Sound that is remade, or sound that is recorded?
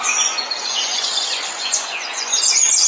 remade